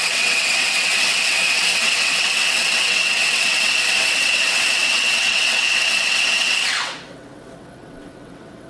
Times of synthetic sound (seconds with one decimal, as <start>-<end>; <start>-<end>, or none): 0.0-8.7